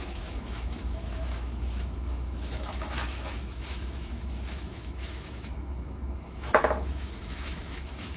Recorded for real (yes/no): no